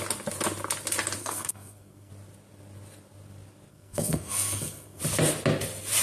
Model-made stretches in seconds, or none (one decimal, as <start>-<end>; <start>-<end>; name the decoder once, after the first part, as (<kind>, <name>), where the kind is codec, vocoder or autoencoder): 1.2-2.1 (codec, SNAC); 3.7-5.0